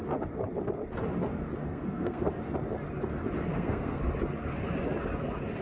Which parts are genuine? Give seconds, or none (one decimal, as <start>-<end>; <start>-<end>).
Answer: 0.0-1.6; 2.2-3.5; 4.0-5.6